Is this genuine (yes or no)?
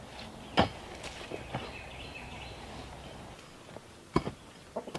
yes